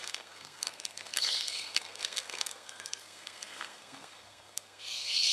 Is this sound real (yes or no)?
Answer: no